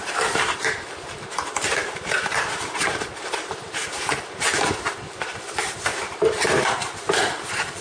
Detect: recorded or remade remade